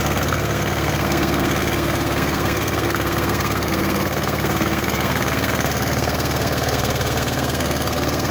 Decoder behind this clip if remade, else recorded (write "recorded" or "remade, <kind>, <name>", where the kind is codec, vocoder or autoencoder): remade, codec, SNAC